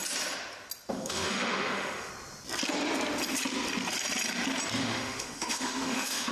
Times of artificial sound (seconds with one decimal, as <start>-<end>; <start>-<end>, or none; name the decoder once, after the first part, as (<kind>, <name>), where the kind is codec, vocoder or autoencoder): 0.9-2.1 (autoencoder, DAC-VAE); 4.8-6.3